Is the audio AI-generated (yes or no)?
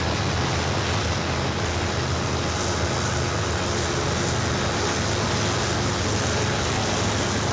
no